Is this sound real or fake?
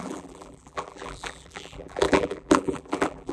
fake